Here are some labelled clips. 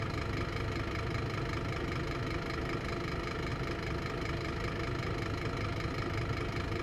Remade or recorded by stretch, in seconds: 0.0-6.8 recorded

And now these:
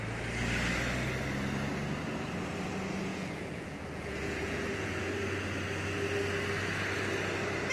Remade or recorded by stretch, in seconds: 0.0-3.1 recorded; 3.1-5.1 remade; 5.1-7.7 recorded

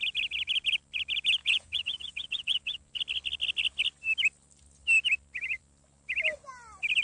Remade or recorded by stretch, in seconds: 0.0-1.4 recorded; 1.4-2.9 remade; 2.9-7.0 recorded

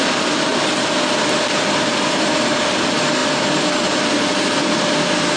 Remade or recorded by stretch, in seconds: 0.0-5.4 recorded

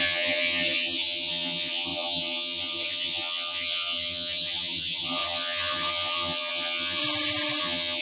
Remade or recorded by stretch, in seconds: 0.0-7.0 remade; 7.0-7.6 recorded; 7.6-8.0 remade

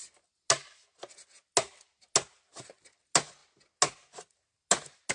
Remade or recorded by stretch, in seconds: 0.0-5.1 recorded